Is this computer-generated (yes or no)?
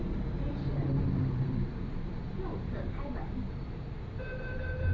yes